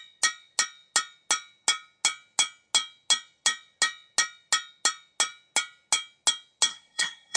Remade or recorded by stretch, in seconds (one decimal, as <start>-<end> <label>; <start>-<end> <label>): 0.0-6.7 recorded; 6.7-7.4 remade